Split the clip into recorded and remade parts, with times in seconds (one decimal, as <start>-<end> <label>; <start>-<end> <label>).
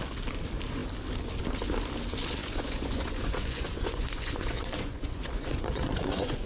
0.0-2.4 recorded; 2.4-6.5 remade